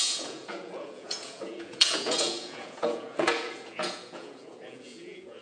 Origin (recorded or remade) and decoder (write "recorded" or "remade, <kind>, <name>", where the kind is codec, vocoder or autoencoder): remade, vocoder, Vocos